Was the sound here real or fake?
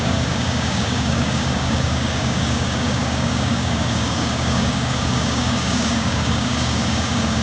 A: fake